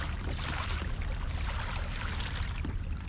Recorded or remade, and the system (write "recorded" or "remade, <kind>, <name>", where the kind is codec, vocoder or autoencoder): recorded